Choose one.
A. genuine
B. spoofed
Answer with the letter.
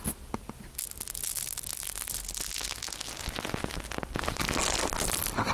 A